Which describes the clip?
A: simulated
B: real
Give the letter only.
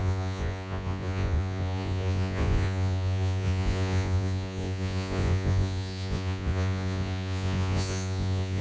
A